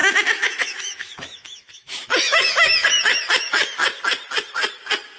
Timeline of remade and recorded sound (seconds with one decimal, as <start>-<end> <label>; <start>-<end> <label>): 0.0-3.8 remade; 3.8-5.2 recorded